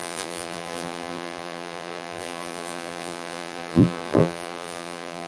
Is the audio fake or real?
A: fake